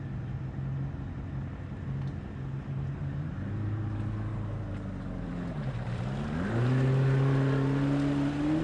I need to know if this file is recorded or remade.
recorded